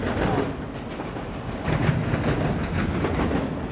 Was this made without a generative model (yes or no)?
yes